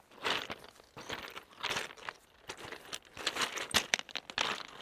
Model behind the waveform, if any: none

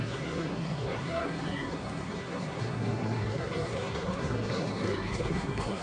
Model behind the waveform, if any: codec, SNAC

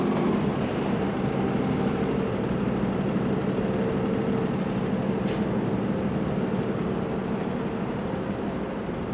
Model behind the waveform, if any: none